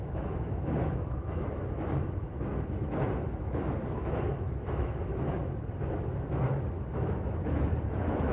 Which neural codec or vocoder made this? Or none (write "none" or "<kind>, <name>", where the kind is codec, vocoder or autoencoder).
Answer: autoencoder, DAC-VAE